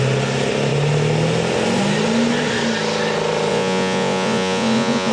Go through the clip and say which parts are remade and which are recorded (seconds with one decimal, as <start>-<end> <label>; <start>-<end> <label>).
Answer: 0.0-3.5 recorded; 3.5-5.1 remade